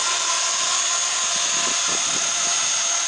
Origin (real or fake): real